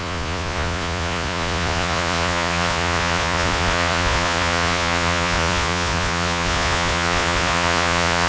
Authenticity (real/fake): fake